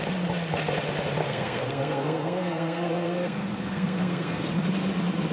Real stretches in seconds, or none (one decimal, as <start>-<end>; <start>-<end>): 0.0-1.2; 4.4-5.3